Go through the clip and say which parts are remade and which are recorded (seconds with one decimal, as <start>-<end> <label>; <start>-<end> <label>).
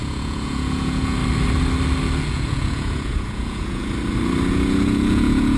0.0-1.2 remade; 1.2-2.3 recorded; 2.3-3.8 remade; 3.8-4.5 recorded; 4.5-5.6 remade